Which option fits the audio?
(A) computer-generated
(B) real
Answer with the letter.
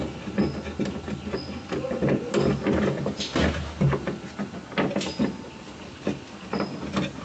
B